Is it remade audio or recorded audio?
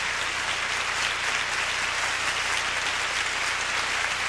recorded